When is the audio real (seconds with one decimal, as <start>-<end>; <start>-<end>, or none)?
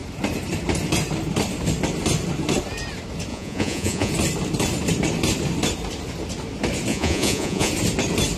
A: 0.0-3.3; 4.1-6.9; 7.7-8.4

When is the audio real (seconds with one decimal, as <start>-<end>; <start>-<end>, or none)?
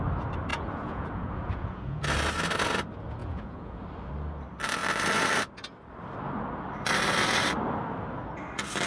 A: 0.0-0.5; 2.0-3.2; 3.8-8.9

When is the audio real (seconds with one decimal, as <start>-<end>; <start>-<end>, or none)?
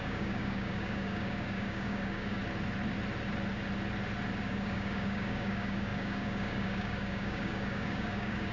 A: 2.4-4.4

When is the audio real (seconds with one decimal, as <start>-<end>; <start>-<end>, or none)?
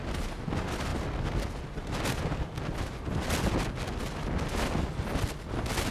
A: 0.0-5.9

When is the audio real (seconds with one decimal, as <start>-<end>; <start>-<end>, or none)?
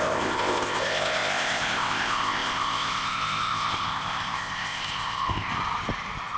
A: 5.5-6.4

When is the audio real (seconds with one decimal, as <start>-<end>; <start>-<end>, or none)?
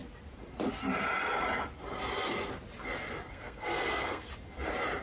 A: 0.0-3.3; 4.3-5.0